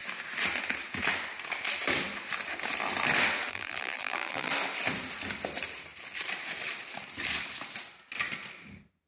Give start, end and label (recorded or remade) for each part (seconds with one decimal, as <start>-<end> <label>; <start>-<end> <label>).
0.0-3.5 recorded; 3.5-4.5 remade; 4.5-9.1 recorded